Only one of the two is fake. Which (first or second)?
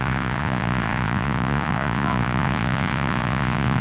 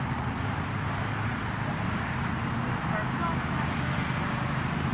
first